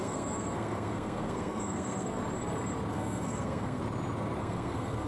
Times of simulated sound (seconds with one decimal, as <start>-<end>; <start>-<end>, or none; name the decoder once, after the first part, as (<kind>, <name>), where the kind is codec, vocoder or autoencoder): 0.0-2.2 (codec, SNAC); 2.9-3.8; 4.4-5.1